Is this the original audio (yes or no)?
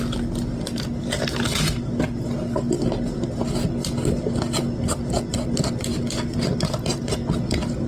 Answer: yes